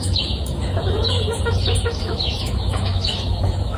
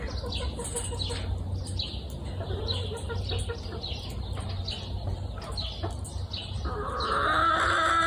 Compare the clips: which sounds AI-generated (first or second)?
first